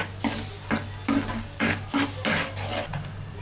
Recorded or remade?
recorded